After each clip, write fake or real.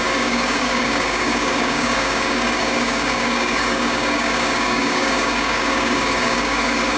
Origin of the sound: fake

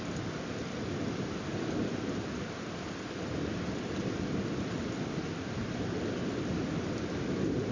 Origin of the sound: fake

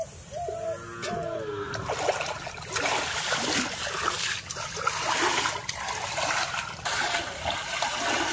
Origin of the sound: real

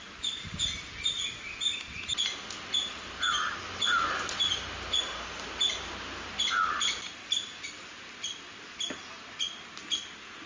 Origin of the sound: real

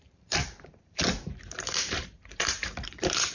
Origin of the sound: fake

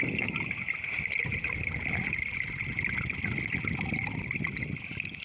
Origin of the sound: real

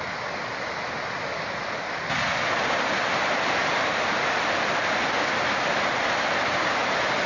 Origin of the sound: real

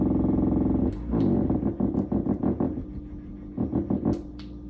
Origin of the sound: real